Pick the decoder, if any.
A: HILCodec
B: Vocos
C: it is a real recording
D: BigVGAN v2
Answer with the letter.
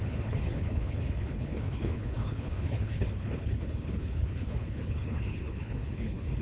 A